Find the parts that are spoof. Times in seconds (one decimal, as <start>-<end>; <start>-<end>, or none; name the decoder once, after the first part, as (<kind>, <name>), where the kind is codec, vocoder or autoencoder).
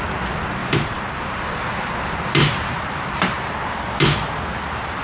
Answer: 0.6-3.6 (vocoder, BigVGAN v2)